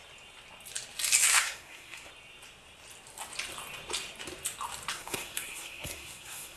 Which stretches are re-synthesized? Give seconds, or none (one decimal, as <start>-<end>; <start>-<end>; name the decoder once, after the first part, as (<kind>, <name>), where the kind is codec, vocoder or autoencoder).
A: 1.3-2.1 (codec, SNAC); 4.9-6.6